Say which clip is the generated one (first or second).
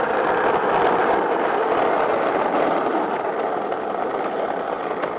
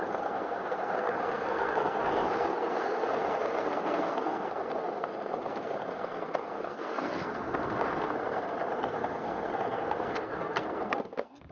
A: second